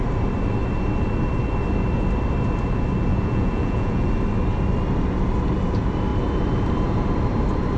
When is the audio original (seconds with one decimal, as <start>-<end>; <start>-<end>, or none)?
0.0-3.1; 4.1-7.8